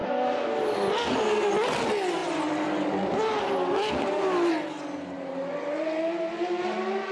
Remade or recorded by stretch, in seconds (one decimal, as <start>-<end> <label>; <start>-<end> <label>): 0.0-7.1 recorded